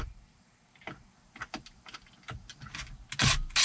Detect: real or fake real